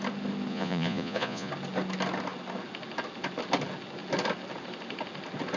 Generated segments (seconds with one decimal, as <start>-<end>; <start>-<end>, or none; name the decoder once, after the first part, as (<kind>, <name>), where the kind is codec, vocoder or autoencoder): 0.5-1.5 (vocoder, Vocos)

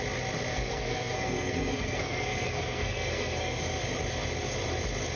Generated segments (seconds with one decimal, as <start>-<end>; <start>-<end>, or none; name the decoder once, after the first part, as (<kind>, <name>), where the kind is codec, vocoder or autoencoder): 0.5-3.6 (codec, SNAC)

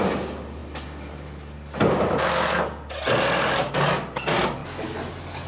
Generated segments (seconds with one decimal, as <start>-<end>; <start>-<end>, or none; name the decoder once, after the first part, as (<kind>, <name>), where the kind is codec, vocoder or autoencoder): none

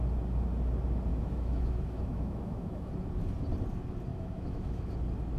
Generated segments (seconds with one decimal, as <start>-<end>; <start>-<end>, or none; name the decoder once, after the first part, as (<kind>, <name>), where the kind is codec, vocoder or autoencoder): 1.1-2.9 (autoencoder, DAC-VAE); 4.1-4.9